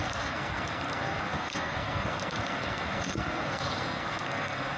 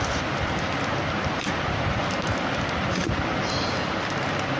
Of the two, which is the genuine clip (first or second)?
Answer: second